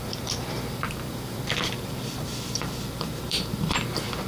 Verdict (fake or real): fake